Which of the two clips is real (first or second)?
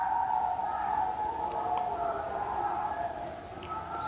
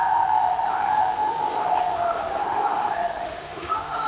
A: first